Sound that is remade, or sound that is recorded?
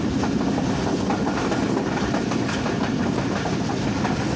recorded